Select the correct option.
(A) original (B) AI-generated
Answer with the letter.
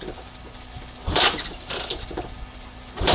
A